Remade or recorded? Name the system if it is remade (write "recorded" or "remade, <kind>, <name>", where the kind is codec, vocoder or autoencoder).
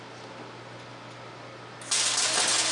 recorded